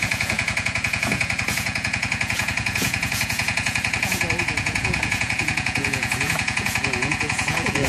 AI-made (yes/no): yes